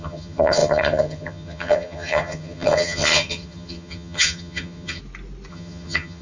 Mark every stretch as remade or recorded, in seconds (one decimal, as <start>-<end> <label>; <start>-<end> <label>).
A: 0.0-5.0 remade; 5.0-5.5 recorded; 5.5-6.2 remade